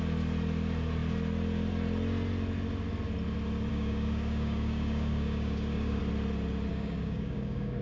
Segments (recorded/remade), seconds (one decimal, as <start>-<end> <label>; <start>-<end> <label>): 0.0-3.7 recorded; 3.7-6.0 remade; 6.0-6.7 recorded; 6.7-7.8 remade